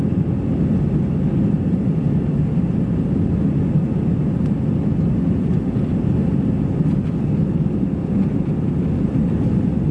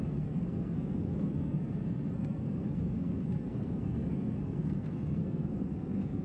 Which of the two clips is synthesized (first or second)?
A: second